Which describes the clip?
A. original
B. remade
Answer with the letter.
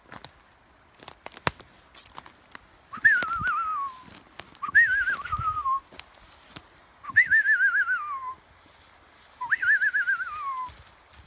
A